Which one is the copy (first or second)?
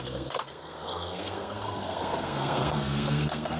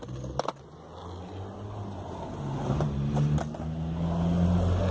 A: first